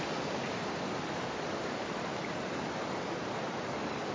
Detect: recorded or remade recorded